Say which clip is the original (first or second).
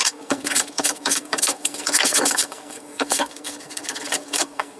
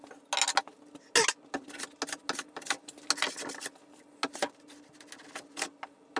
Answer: second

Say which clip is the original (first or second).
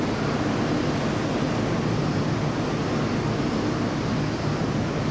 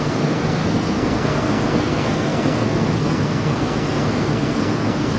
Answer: first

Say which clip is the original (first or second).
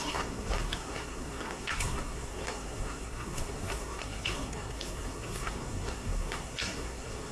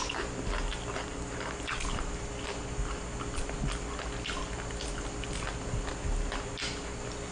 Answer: second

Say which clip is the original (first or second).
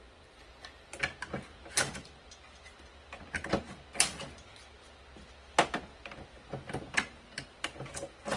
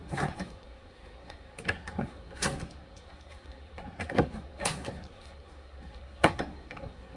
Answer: first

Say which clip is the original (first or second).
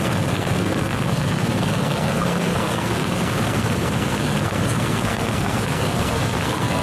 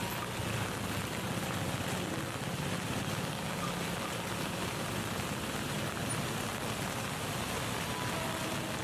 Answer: second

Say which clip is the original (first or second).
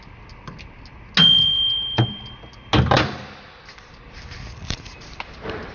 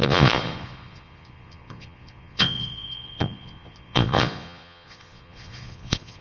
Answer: first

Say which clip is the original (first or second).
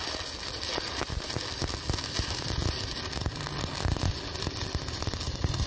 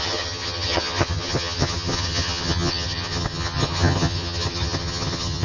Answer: first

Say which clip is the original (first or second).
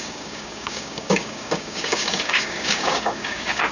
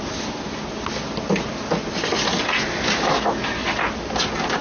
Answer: second